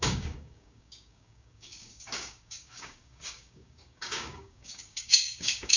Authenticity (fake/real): fake